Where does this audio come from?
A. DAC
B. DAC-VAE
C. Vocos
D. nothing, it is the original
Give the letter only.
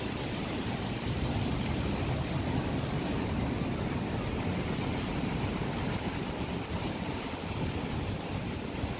D